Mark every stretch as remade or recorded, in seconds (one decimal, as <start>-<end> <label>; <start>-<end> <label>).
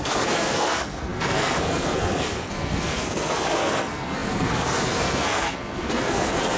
0.0-6.6 remade